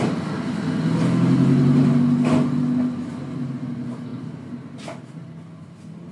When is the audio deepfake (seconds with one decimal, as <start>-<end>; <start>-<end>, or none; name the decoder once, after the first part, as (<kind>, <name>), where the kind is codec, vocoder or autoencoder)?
none

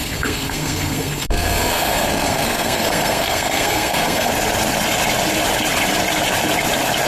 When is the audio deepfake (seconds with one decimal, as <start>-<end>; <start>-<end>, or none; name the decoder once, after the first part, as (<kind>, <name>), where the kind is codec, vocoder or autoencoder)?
0.0-4.3 (codec, SNAC)